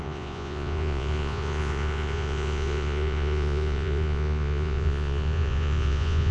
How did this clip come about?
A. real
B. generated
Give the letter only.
B